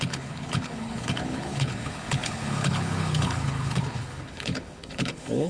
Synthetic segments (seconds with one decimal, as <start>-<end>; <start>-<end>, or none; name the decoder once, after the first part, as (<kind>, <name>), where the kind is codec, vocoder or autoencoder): 0.0-5.5 (codec, HILCodec)